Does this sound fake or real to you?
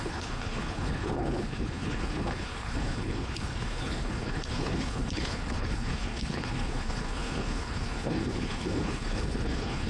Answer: fake